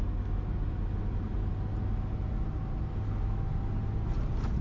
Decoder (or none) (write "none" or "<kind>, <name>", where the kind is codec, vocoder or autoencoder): none